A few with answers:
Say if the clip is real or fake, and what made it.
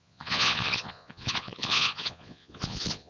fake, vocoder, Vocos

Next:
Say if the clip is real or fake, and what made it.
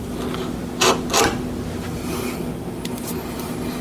real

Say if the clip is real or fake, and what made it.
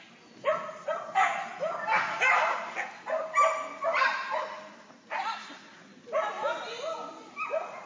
real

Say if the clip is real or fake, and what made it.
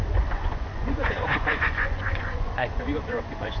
fake, vocoder, Vocos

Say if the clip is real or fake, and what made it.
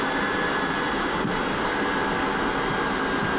real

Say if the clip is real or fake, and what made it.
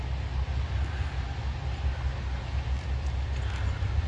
real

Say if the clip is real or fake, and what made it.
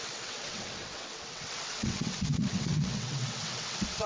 fake, vocoder, WaveNeXt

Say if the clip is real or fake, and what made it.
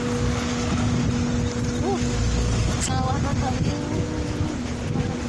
real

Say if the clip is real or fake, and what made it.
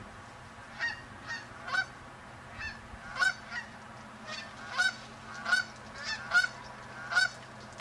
real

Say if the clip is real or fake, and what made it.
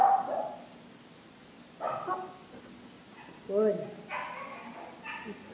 real